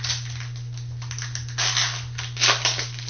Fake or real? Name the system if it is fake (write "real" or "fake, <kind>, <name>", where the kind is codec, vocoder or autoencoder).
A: real